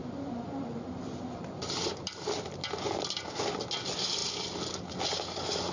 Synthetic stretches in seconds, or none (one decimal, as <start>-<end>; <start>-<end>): none